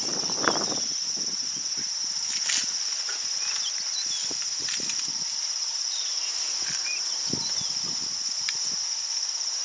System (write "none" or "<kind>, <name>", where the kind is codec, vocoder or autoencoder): none